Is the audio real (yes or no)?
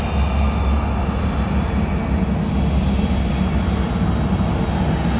yes